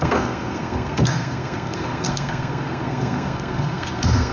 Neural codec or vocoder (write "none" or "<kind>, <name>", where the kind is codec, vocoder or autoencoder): codec, SNAC